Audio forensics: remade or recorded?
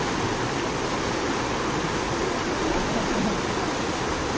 recorded